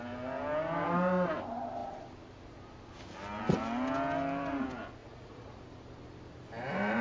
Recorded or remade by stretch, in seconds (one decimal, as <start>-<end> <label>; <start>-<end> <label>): 0.0-5.0 recorded; 5.0-5.6 remade; 5.6-7.0 recorded